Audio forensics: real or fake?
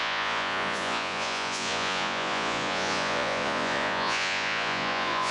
fake